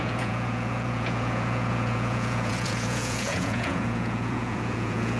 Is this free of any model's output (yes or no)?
no